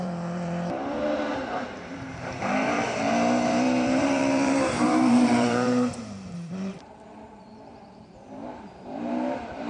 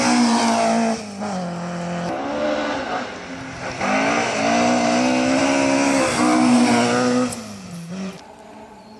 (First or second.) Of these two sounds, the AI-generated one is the first